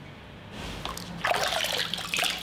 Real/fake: real